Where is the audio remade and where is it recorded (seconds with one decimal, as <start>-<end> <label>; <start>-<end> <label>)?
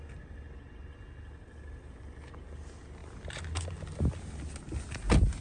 0.0-5.4 recorded